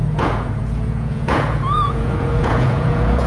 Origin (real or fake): fake